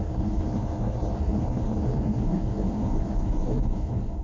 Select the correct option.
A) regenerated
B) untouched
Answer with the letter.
A